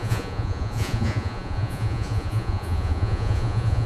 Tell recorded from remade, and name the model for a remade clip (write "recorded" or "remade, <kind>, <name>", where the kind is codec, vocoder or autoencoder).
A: remade, vocoder, Vocos